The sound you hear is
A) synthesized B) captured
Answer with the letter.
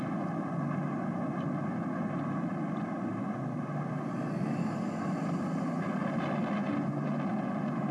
B